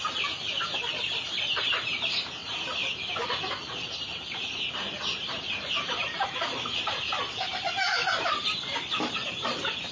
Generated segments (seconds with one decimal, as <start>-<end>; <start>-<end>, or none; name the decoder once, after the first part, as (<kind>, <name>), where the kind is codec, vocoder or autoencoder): 0.0-9.9 (vocoder, BigVGAN v2)